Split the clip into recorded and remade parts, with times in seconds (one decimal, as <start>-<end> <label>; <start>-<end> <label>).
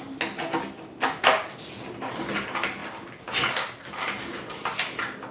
0.0-5.3 recorded